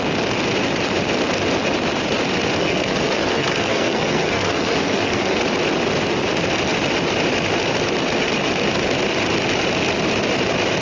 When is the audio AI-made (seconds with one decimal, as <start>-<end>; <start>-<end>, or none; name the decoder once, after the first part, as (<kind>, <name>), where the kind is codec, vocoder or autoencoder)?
2.6-5.4 (codec, SNAC)

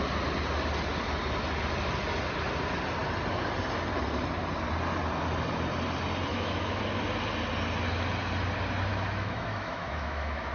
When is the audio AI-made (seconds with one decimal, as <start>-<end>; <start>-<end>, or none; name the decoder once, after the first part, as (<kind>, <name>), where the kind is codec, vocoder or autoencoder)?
6.3-6.8 (autoencoder, DAC-VAE); 8.9-10.5

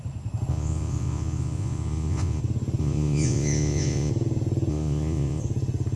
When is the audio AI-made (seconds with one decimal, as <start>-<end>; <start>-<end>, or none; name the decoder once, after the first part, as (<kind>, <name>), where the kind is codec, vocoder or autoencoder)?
0.5-2.4 (vocoder, Vocos); 2.8-4.1; 4.7-5.4

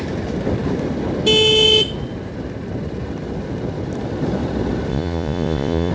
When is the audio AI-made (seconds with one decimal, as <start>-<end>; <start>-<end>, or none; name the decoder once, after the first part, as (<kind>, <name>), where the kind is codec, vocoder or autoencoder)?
4.9-5.9 (vocoder, Vocos)